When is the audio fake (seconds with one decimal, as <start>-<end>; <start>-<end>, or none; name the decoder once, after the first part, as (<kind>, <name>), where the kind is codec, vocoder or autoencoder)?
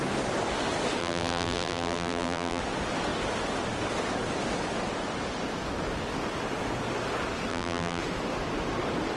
1.0-2.6 (vocoder, BigVGAN v2); 7.5-8.0